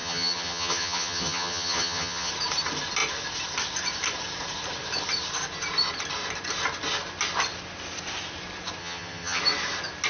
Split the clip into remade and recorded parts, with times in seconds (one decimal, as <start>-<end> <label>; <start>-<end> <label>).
0.0-2.3 remade; 2.3-8.8 recorded; 8.8-9.4 remade; 9.4-10.1 recorded